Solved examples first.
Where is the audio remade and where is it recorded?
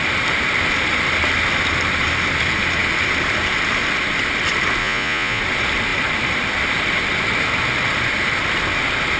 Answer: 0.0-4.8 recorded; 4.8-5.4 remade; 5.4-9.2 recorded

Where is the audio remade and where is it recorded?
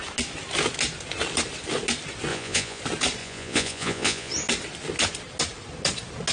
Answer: 0.0-2.3 recorded; 2.3-2.8 remade; 2.8-3.2 recorded; 3.2-4.3 remade; 4.3-6.3 recorded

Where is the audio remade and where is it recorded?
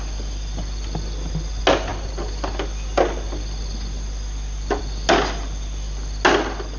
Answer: 0.0-6.8 recorded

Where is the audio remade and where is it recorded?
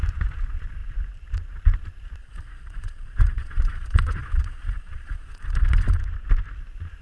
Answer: 0.0-2.2 recorded; 2.2-6.0 remade; 6.0-7.0 recorded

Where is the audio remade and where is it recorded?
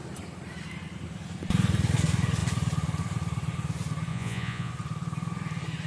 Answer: 0.0-4.1 recorded; 4.1-4.7 remade; 4.7-5.9 recorded